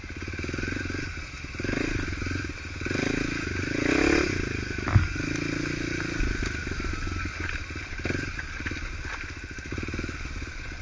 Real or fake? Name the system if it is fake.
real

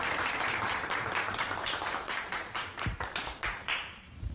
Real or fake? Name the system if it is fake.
fake, vocoder, BigVGAN v2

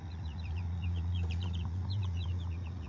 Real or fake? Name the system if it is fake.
fake, vocoder, Vocos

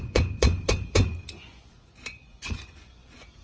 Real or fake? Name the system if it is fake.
fake, vocoder, Vocos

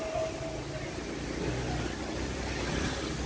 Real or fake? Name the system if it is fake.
real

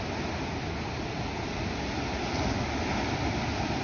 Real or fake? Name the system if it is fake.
real